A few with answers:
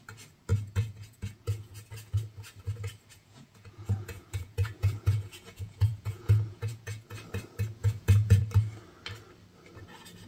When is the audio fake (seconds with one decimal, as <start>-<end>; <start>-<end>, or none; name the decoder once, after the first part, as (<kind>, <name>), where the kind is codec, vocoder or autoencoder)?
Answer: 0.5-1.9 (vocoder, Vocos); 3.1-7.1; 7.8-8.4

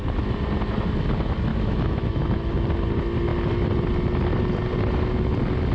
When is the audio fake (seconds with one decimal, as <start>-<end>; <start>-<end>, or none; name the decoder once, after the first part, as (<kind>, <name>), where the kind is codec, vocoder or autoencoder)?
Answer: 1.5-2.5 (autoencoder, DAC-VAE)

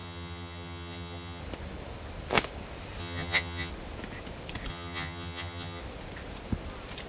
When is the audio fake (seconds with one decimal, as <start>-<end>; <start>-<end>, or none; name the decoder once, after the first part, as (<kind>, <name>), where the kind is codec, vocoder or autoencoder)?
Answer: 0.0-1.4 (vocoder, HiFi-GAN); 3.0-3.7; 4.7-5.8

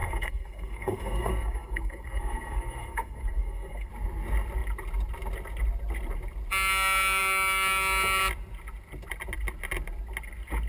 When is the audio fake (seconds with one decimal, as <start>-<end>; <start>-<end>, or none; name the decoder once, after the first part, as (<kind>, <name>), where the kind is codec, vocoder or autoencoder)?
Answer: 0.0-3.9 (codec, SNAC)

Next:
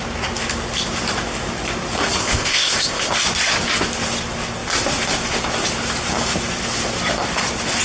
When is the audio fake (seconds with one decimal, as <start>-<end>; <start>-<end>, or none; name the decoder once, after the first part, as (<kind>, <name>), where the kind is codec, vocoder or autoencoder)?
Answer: 2.2-3.1 (codec, ZipCodec)

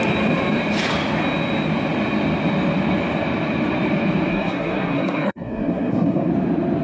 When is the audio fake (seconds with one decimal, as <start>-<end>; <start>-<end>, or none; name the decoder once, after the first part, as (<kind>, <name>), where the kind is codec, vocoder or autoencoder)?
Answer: 4.3-6.3 (codec, SNAC)

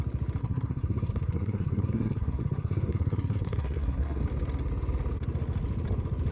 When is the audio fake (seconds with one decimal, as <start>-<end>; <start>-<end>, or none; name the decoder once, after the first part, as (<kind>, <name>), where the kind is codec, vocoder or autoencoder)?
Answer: 0.4-4.2 (codec, SNAC)